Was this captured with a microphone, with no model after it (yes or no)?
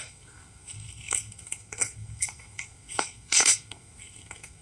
no